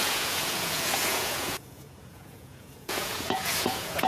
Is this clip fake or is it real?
fake